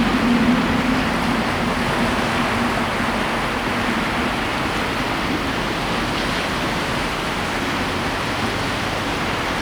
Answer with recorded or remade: recorded